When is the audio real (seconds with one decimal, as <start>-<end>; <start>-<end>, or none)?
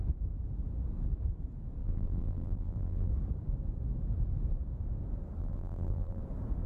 0.0-1.8; 3.1-5.4; 6.2-6.7